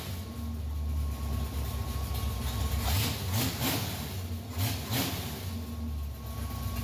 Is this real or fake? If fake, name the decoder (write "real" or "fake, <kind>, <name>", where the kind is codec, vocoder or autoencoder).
real